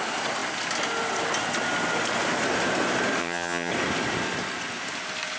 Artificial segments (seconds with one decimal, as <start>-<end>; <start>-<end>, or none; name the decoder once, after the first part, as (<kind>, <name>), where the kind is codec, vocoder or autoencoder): 3.2-3.7 (vocoder, HiFi-GAN)

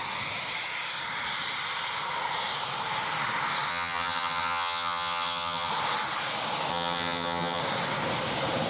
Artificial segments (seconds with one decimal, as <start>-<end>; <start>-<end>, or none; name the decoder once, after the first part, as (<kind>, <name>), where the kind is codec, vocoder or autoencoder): 3.7-5.7 (vocoder, HiFi-GAN); 6.7-7.6